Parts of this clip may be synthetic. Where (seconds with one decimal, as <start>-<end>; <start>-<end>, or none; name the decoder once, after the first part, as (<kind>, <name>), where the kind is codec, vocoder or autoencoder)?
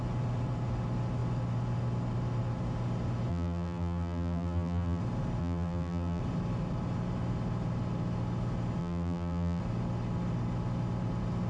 3.3-5.0 (vocoder, BigVGAN v2); 5.4-6.2; 8.8-9.6